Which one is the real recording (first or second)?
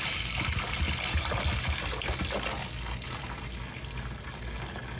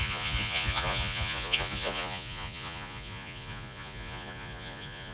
first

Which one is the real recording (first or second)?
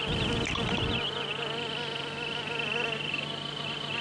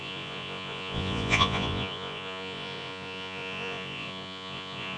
first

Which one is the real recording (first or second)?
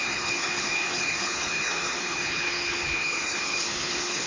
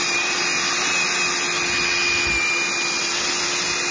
second